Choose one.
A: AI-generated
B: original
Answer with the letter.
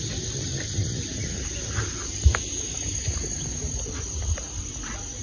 B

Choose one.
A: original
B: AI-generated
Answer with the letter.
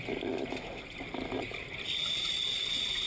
A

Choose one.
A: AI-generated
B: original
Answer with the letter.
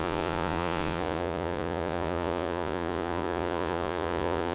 A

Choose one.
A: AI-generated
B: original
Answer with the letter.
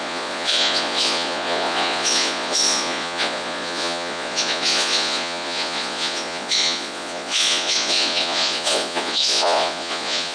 A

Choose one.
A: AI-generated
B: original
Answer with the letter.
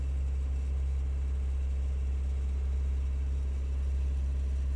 B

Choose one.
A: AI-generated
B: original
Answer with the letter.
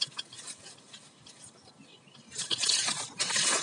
B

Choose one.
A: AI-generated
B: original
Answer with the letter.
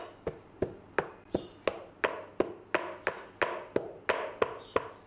B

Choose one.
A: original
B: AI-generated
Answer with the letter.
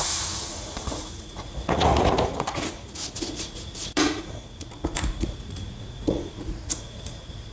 B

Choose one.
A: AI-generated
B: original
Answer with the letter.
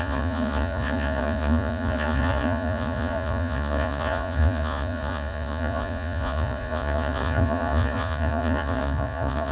A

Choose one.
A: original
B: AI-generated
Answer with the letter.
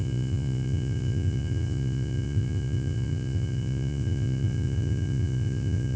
B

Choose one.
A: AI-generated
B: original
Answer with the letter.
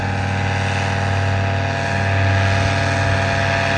B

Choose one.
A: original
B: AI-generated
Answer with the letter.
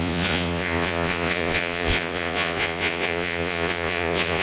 B